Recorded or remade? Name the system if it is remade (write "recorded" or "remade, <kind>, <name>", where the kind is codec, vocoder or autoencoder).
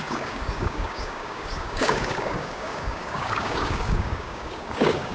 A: remade, codec, DAC